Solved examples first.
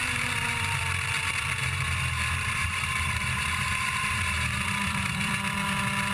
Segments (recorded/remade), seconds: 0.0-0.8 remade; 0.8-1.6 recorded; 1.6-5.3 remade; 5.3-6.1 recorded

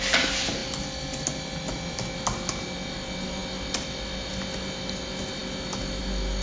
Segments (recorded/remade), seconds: 0.0-6.4 recorded

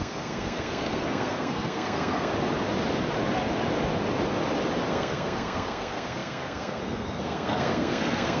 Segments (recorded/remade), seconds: 0.0-2.3 remade; 2.3-4.9 recorded; 4.9-8.4 remade

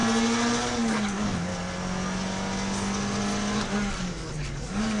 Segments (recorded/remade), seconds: 0.0-0.6 recorded; 0.6-1.5 remade; 1.5-3.9 recorded; 3.9-5.0 remade

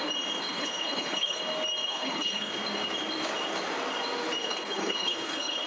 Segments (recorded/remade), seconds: 0.0-0.4 recorded; 0.4-1.4 remade; 1.4-1.9 recorded; 1.9-2.5 remade; 2.5-4.4 recorded; 4.4-5.7 remade